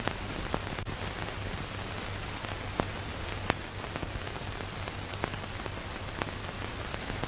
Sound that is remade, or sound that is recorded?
recorded